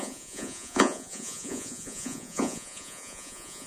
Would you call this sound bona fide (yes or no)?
no